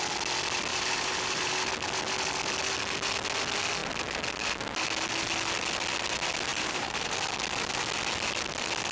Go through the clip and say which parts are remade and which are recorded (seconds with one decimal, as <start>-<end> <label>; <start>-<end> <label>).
0.0-0.7 recorded; 0.7-1.7 remade; 1.7-6.5 recorded; 6.5-7.1 remade; 7.1-8.9 recorded